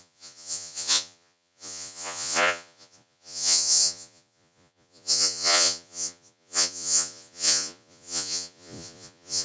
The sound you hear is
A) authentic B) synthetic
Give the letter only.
B